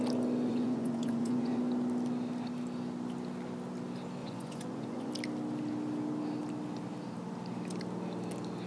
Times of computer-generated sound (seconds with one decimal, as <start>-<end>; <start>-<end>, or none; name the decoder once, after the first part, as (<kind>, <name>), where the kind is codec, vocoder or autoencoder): 0.5-1.6 (vocoder, Vocos); 4.2-5.1